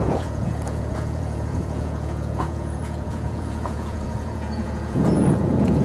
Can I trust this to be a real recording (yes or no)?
no